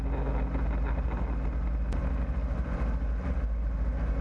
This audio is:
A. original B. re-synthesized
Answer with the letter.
A